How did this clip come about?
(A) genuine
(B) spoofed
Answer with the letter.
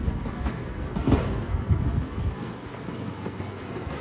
B